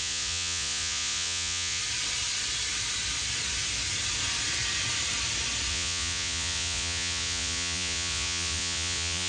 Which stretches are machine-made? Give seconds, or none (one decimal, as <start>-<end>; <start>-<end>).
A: 0.0-1.8; 5.7-9.3